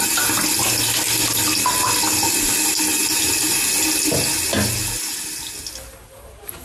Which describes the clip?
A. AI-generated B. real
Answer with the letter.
B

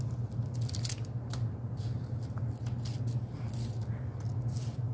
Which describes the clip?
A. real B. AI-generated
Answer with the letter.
A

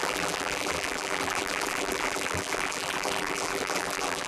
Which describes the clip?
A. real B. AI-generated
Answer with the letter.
B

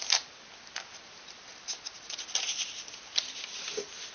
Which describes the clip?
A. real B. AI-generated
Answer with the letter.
A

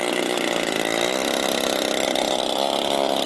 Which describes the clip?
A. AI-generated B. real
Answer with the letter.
B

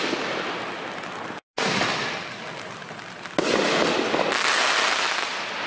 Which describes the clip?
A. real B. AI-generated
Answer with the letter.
A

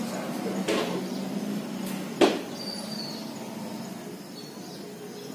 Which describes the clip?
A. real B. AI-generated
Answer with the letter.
A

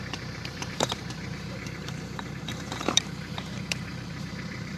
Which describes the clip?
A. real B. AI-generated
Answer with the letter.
B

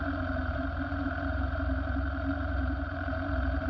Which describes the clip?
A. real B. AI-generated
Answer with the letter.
B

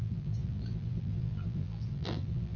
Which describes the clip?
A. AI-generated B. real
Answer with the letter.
A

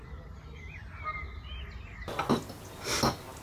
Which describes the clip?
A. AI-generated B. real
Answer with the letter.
B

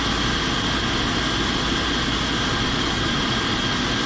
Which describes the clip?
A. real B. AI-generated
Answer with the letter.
A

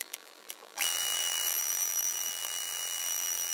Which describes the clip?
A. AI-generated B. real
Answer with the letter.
A